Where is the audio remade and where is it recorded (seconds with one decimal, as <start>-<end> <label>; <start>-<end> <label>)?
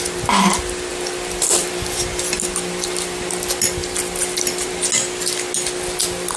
0.0-0.9 recorded; 0.9-3.3 remade; 3.3-3.8 recorded; 3.8-4.7 remade; 4.7-6.4 recorded